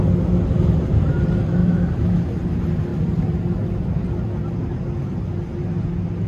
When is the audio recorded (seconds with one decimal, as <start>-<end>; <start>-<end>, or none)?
0.0-1.6; 2.2-6.3